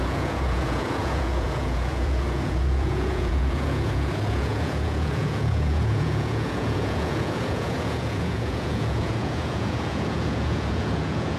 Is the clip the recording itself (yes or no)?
no